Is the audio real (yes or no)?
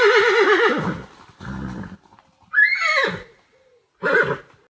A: yes